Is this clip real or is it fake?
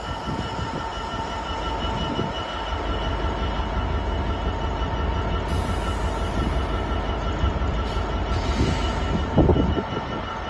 real